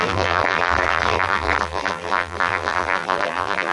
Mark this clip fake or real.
fake